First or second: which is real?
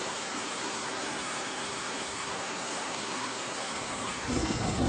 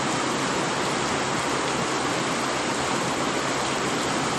second